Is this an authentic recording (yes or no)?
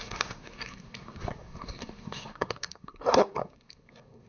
no